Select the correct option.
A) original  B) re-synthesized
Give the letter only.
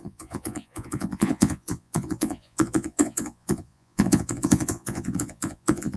B